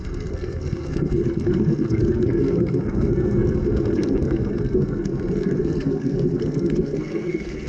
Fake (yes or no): yes